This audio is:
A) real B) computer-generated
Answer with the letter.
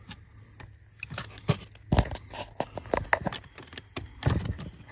A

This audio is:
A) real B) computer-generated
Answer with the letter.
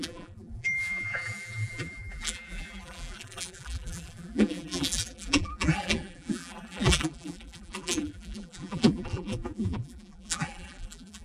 B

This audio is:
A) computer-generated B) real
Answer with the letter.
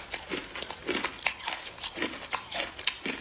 B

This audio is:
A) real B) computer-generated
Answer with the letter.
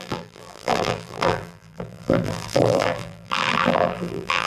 B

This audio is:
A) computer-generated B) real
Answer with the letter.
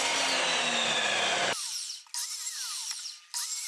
B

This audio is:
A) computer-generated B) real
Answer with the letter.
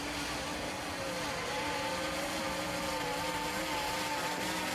B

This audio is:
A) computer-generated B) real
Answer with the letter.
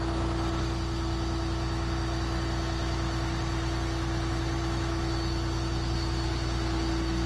B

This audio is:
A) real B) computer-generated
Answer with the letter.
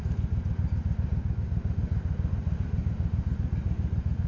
A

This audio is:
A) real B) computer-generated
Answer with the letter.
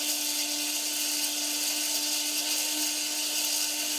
A